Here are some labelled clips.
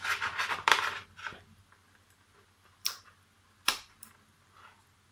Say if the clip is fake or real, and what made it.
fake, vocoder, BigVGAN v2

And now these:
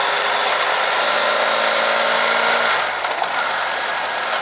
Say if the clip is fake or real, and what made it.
real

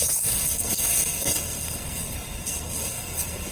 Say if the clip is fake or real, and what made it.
fake, codec, SNAC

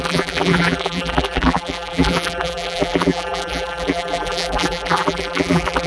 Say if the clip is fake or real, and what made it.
fake, vocoder, BigVGAN v2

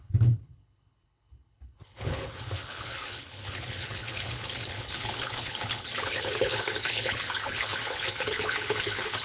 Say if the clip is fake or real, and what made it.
fake, codec, HILCodec